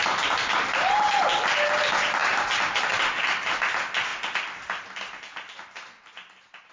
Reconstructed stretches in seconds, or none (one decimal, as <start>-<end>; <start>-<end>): none